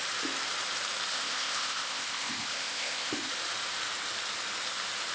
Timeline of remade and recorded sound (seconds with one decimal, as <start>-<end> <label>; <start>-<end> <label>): 0.0-1.1 recorded; 1.1-3.3 remade; 3.3-5.1 recorded